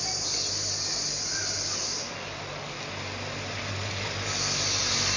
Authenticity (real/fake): real